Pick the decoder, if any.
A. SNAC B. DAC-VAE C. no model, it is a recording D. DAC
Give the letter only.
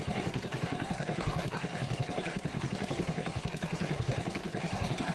A